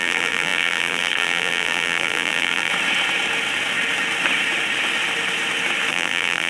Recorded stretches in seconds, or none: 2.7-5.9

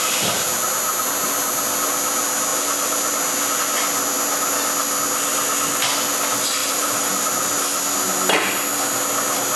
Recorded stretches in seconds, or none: 0.0-6.6; 7.1-9.6

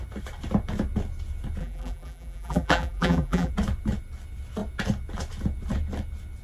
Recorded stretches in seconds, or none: 0.0-1.6; 3.5-6.4

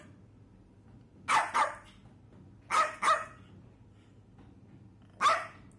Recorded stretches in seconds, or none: 0.0-5.8